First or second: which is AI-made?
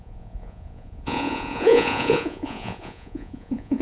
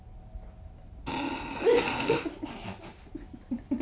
first